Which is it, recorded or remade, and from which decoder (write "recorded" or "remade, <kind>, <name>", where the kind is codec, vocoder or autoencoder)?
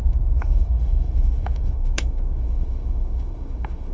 remade, autoencoder, DAC-VAE